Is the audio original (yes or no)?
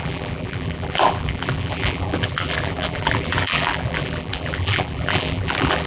no